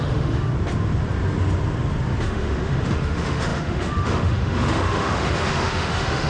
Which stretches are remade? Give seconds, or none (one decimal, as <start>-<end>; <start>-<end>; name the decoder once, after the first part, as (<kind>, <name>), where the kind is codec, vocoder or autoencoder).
0.0-0.5 (autoencoder, DAC-VAE); 2.2-6.3